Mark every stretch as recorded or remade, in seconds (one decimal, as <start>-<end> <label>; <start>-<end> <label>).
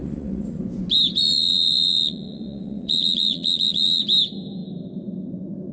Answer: 0.0-0.6 remade; 0.6-1.2 recorded; 1.2-4.0 remade; 4.0-5.7 recorded